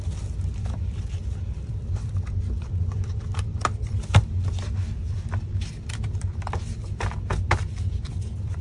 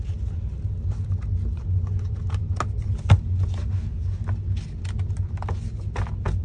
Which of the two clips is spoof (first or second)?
first